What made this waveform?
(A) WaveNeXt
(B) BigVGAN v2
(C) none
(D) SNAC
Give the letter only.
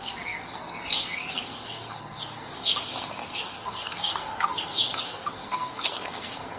D